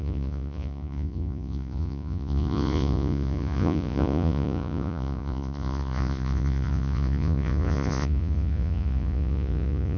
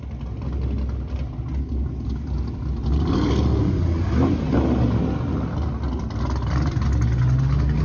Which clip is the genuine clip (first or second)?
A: second